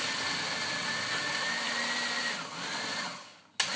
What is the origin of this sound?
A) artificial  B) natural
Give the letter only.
B